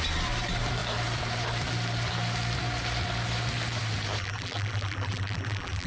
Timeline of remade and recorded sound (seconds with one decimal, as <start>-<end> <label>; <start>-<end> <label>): 0.0-4.2 recorded; 4.2-5.9 remade